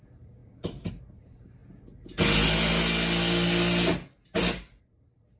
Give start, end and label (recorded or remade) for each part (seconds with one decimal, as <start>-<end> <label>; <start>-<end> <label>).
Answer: 0.0-1.6 remade; 1.6-4.8 recorded; 4.8-5.4 remade